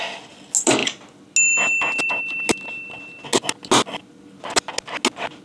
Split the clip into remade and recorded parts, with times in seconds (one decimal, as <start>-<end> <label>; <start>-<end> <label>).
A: 0.0-5.4 recorded